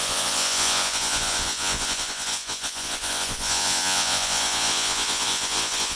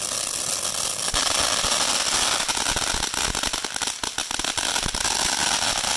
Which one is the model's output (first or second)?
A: first